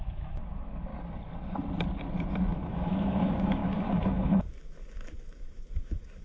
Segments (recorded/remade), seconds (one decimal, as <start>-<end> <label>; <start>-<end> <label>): 0.0-0.9 remade; 0.9-2.5 recorded; 2.5-6.2 remade